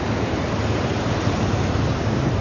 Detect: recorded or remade recorded